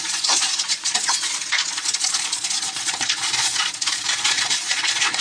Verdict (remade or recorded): remade